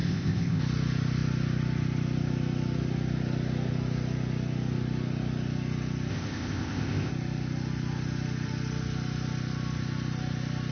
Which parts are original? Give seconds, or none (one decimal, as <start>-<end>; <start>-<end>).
0.6-6.1; 7.1-10.7